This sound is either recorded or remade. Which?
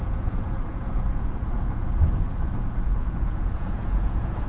remade